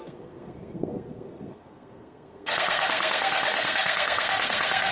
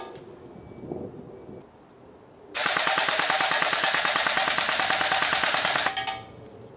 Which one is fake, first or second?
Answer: first